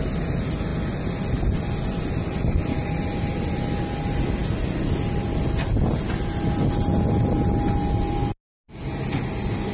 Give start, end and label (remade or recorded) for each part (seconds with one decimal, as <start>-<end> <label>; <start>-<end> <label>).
0.0-9.7 recorded

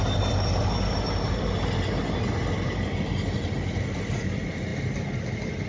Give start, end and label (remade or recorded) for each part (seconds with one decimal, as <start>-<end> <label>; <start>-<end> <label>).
0.0-5.7 recorded

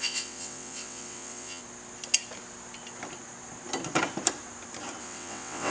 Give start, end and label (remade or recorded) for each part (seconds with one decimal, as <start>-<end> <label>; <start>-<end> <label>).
0.0-1.6 remade; 1.6-5.0 recorded; 5.0-5.7 remade

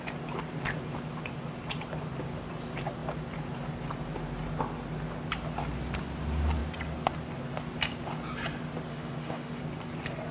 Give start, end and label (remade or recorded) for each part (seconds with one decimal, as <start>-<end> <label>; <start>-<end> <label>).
0.0-8.9 recorded; 8.9-9.6 remade; 9.6-10.3 recorded

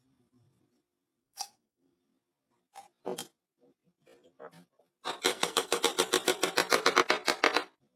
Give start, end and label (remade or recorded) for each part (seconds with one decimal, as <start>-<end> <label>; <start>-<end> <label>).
0.0-1.2 recorded; 1.2-2.0 remade; 2.0-5.3 recorded; 5.3-5.8 remade; 5.8-8.0 recorded

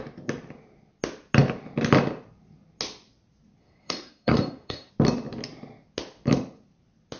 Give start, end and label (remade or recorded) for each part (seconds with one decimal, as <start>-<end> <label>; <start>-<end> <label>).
0.0-3.6 recorded; 3.6-4.9 remade; 4.9-7.2 recorded